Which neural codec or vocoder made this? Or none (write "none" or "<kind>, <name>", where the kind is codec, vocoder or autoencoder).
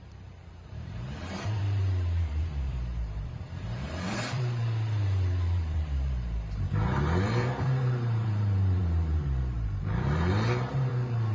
vocoder, BigVGAN v2